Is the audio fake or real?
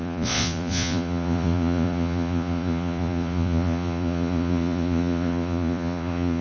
fake